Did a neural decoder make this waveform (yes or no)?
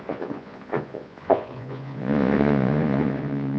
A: yes